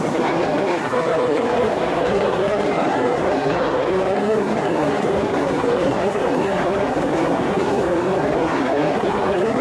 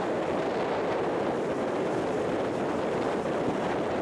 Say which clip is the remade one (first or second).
first